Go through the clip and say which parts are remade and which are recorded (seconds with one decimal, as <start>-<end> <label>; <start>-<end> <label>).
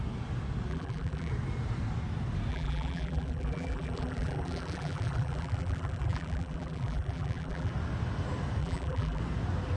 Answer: 0.0-0.7 recorded; 0.7-1.3 remade; 1.3-2.5 recorded; 2.5-7.7 remade; 7.7-8.6 recorded; 8.6-9.2 remade; 9.2-9.8 recorded